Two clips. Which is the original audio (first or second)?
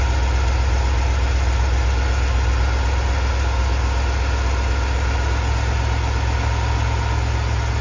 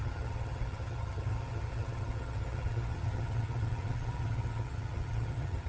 first